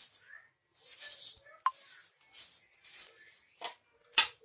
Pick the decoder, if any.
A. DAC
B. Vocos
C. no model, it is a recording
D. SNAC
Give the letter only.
C